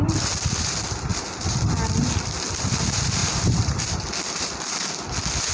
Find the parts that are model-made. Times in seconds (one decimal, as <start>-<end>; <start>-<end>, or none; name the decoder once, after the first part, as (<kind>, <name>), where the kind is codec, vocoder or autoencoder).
3.2-3.8 (vocoder, BigVGAN v2)